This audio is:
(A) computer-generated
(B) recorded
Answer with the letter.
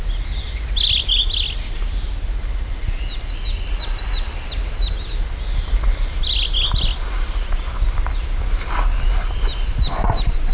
B